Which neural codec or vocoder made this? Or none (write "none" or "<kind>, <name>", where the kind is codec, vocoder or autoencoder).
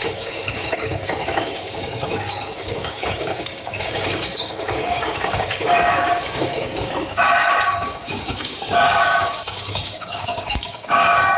codec, DAC